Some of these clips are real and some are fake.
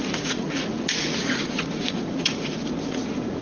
fake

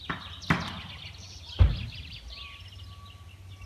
real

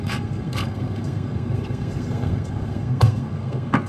fake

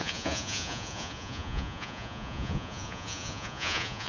fake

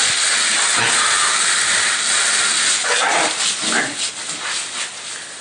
real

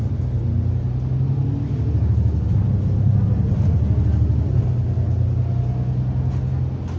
real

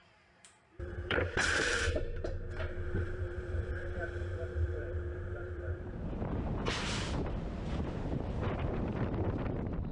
fake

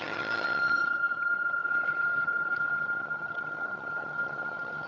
fake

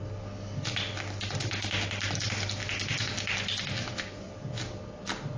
real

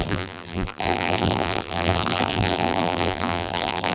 fake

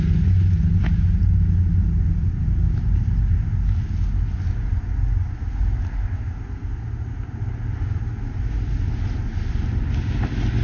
real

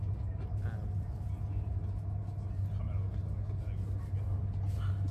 real